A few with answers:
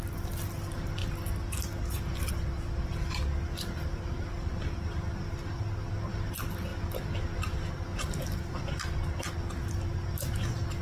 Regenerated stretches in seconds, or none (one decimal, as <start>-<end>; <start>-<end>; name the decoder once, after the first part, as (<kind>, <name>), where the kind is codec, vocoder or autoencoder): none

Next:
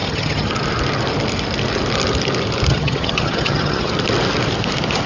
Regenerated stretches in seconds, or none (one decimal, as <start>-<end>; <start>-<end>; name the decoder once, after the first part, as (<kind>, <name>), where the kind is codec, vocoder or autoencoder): 0.0-0.5 (vocoder, HiFi-GAN); 2.7-3.9

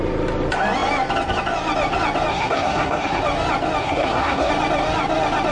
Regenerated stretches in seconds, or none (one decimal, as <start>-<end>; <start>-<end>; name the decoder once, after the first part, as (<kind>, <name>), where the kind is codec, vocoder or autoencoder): 2.3-3.2 (codec, SNAC); 3.8-4.5

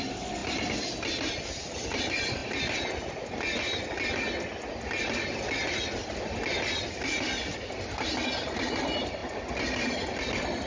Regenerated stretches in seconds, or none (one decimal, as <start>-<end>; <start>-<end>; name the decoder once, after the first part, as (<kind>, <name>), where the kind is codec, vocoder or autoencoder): none